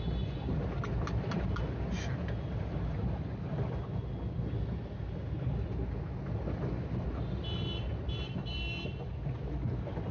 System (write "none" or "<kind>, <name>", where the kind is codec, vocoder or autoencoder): none